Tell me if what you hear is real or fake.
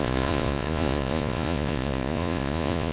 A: fake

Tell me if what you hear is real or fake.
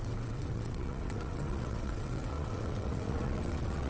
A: fake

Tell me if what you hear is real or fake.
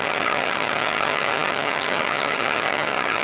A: fake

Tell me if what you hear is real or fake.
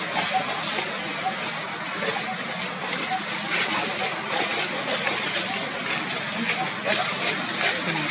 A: real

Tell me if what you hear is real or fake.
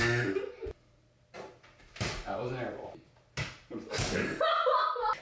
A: real